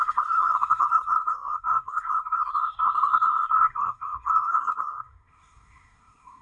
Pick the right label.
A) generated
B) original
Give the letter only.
A